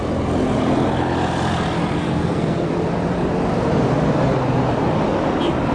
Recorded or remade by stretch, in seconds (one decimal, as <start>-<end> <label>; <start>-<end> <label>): 0.0-2.0 recorded; 2.0-2.7 remade; 2.7-5.7 recorded